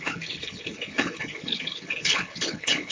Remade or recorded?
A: remade